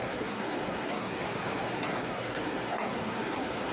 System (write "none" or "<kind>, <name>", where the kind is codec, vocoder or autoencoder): codec, SNAC